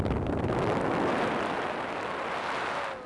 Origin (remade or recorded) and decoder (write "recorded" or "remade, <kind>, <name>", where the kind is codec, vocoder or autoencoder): recorded